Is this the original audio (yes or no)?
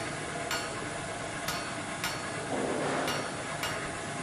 yes